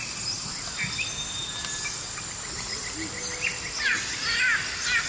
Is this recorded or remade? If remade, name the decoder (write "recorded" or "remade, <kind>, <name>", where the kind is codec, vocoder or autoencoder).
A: recorded